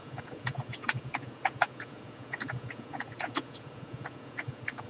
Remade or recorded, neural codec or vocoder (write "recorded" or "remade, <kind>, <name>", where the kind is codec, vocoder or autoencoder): remade, vocoder, Vocos